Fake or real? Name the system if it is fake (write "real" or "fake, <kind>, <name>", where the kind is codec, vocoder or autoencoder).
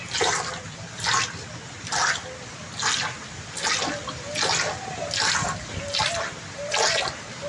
real